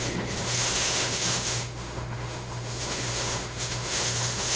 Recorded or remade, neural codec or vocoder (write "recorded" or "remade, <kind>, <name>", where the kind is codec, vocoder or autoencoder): remade, autoencoder, DAC-VAE